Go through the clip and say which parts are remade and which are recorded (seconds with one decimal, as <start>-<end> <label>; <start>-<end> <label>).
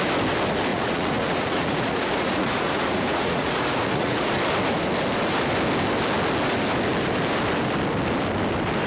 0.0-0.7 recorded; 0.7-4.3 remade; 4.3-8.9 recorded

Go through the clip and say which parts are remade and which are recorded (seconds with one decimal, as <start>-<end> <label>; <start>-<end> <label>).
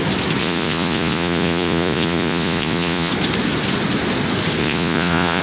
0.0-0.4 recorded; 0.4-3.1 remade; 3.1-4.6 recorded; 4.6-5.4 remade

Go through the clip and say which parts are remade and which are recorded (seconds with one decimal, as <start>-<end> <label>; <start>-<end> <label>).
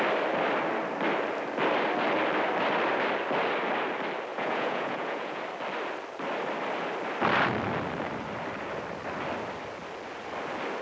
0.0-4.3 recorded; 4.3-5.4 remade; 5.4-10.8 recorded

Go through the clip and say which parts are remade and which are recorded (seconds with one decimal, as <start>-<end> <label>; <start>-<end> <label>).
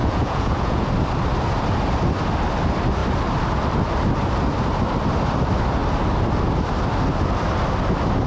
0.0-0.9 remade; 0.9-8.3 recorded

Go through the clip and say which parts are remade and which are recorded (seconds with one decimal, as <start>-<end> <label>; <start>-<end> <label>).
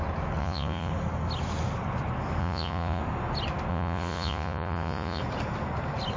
0.0-0.4 recorded; 0.4-0.9 remade; 0.9-2.4 recorded; 2.4-3.0 remade; 3.0-3.7 recorded; 3.7-5.2 remade; 5.2-6.2 recorded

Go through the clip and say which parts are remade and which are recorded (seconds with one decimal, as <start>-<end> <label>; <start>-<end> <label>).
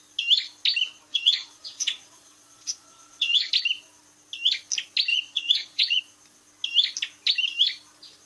0.0-1.1 recorded; 1.1-3.5 remade; 3.5-5.1 recorded; 5.1-6.0 remade; 6.0-8.3 recorded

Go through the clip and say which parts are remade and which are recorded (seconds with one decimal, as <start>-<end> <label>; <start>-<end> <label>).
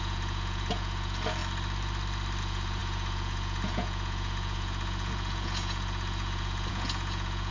0.0-1.4 remade; 1.4-2.4 recorded; 2.4-7.5 remade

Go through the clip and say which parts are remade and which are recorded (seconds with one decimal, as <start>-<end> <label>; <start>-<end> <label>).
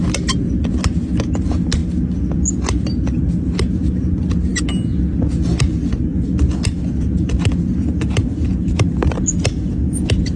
0.0-10.4 recorded